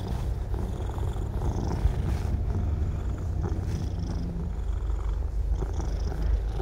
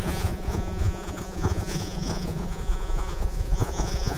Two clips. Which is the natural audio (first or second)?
first